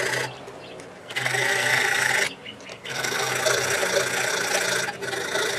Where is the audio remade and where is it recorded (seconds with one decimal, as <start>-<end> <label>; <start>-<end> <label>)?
0.0-1.0 recorded; 1.0-2.1 remade; 2.1-2.7 recorded; 2.7-3.3 remade; 3.3-5.6 recorded